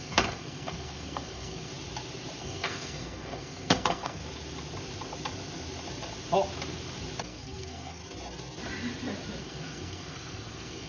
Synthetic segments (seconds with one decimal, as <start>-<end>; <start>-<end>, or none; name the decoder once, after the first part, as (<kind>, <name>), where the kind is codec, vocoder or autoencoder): 0.0-1.7 (codec, SNAC); 2.4-4.2; 7.2-8.0; 9.4-10.9